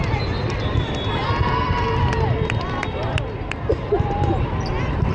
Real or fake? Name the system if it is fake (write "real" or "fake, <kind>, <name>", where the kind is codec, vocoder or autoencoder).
fake, vocoder, BigVGAN v2